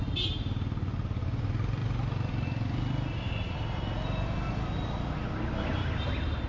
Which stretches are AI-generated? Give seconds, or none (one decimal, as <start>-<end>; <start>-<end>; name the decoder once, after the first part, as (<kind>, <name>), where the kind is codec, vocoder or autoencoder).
none